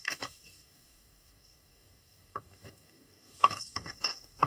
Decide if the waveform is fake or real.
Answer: fake